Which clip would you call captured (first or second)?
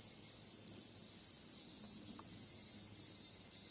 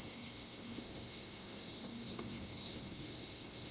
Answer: first